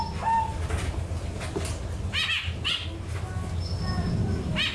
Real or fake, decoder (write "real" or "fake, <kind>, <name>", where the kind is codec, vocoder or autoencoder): real